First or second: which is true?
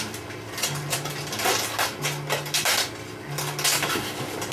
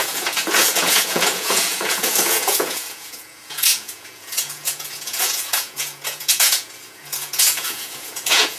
first